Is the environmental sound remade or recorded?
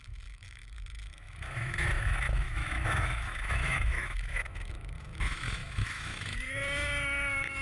remade